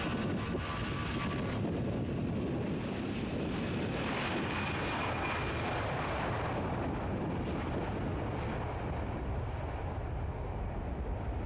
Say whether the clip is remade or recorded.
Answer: recorded